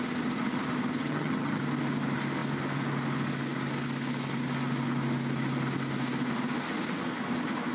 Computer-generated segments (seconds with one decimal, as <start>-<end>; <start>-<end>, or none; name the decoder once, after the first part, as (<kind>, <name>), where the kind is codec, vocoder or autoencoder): 1.0-1.6 (vocoder, HiFi-GAN)